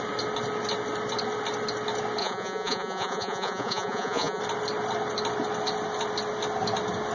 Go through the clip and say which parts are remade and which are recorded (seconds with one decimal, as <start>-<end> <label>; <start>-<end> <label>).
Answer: 0.0-2.2 recorded; 2.2-4.4 remade; 4.4-7.1 recorded

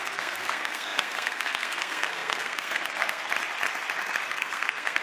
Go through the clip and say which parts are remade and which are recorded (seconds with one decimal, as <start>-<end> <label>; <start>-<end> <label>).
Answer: 0.0-3.3 remade; 3.3-4.3 recorded; 4.3-5.0 remade